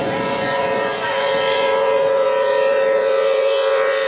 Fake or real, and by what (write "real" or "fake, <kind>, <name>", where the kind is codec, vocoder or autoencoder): fake, vocoder, Vocos